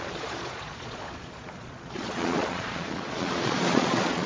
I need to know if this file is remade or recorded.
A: remade